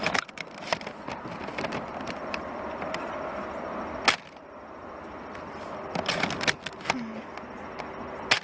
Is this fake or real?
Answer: real